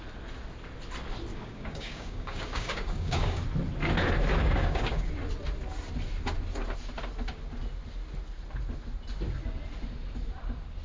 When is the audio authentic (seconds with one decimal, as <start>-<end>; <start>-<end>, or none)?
0.0-1.3; 3.4-4.3; 5.1-10.8